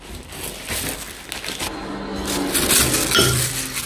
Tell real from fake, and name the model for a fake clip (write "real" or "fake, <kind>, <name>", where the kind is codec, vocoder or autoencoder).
real